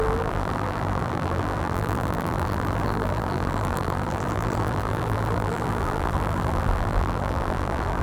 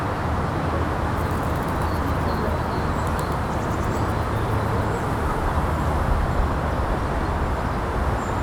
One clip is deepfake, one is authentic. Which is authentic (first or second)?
second